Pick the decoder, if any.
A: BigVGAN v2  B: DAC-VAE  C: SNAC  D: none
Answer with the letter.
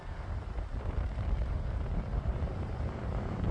D